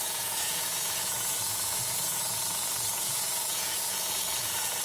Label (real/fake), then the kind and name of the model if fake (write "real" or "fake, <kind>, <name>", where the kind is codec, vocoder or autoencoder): fake, vocoder, Vocos